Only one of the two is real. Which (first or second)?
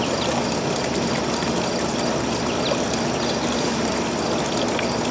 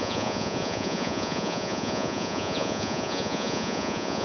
first